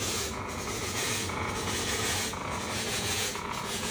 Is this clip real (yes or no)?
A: no